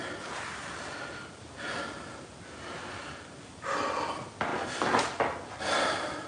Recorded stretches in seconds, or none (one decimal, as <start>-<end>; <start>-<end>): 0.0-6.3